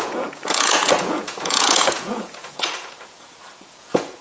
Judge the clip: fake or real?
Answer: fake